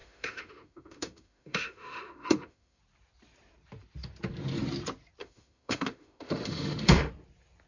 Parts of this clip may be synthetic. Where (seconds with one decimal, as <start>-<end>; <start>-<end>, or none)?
0.0-2.8; 5.2-7.1